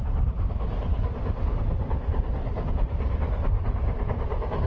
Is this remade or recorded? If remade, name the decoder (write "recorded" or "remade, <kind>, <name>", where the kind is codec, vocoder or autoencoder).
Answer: remade, vocoder, BigVGAN v2